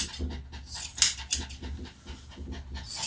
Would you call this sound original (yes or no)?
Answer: yes